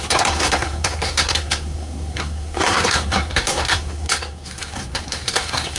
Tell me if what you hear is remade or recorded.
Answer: remade